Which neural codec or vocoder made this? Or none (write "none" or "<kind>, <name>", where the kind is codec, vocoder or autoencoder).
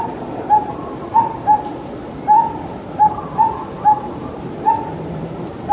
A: none